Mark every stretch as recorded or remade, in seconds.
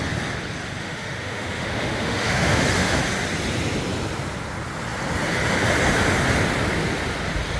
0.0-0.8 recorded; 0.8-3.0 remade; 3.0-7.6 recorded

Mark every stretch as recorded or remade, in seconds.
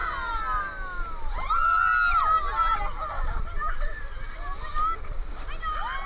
0.0-6.1 recorded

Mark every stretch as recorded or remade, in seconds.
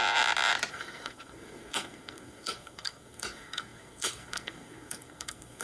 0.0-0.7 recorded; 0.7-5.6 remade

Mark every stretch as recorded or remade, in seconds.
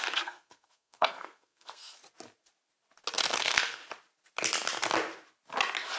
0.0-2.0 remade; 2.0-3.4 recorded; 3.4-3.8 remade; 3.8-6.0 recorded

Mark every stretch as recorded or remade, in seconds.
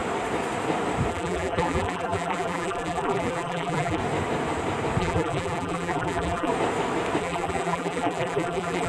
0.0-1.1 recorded; 1.1-4.0 remade; 4.0-5.0 recorded; 5.0-6.5 remade; 6.5-7.2 recorded; 7.2-8.9 remade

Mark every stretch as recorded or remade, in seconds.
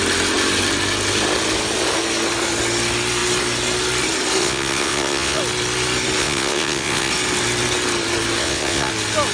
0.0-4.4 recorded; 4.4-5.4 remade; 5.4-6.2 recorded; 6.2-7.1 remade; 7.1-8.4 recorded; 8.4-8.9 remade; 8.9-9.3 recorded